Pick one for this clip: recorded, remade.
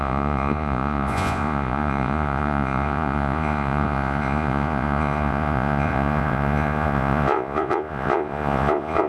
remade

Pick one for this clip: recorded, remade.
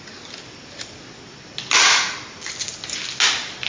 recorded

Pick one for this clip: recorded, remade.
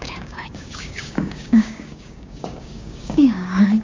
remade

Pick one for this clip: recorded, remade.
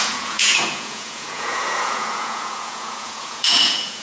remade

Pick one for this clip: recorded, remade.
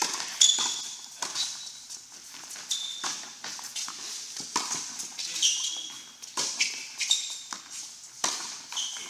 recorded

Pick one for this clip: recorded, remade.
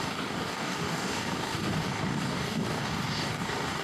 remade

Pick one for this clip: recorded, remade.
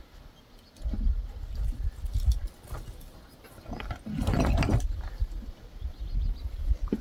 recorded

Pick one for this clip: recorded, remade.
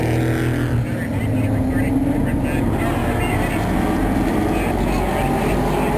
recorded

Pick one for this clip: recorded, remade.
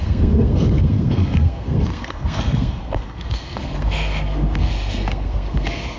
remade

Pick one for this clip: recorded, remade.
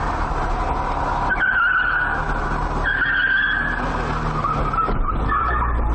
recorded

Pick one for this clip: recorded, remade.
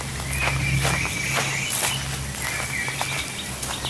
recorded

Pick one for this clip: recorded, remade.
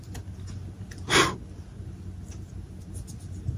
recorded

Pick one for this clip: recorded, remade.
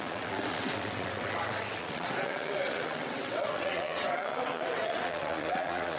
remade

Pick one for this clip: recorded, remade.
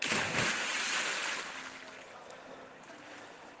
recorded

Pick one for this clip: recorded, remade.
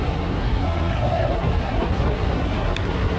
remade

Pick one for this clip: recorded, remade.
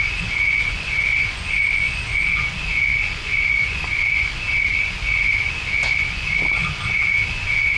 remade